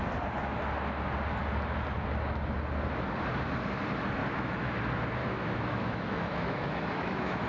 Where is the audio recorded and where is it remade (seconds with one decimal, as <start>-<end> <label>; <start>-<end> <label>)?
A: 0.0-4.2 recorded; 4.2-4.8 remade; 4.8-5.2 recorded; 5.2-7.5 remade